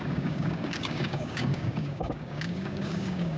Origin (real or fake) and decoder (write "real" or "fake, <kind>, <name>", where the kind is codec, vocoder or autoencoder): fake, codec, DAC